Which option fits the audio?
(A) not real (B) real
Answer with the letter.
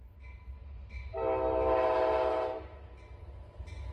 B